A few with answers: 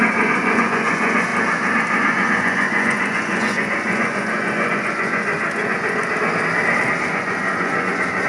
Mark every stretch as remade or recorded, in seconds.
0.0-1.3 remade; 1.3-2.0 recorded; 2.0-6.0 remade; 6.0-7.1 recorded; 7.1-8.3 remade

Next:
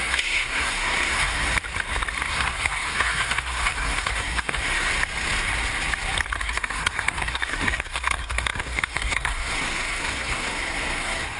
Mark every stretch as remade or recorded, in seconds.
0.0-1.5 remade; 1.5-2.3 recorded; 2.3-4.9 remade; 4.9-6.4 recorded; 6.4-11.4 remade

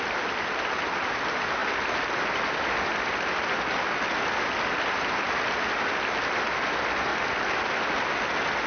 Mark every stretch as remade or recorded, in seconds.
0.0-8.7 recorded

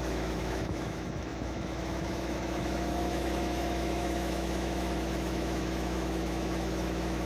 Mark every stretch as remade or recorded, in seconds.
0.0-7.3 remade

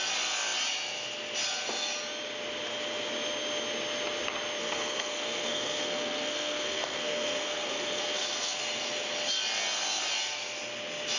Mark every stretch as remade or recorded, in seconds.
0.0-4.6 recorded; 4.6-8.6 remade; 8.6-11.2 recorded

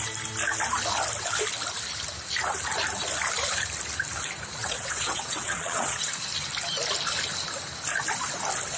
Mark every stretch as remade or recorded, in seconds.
0.0-4.6 recorded; 4.6-6.1 remade; 6.1-8.8 recorded